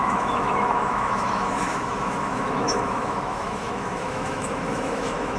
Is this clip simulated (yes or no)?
yes